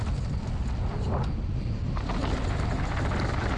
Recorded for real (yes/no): yes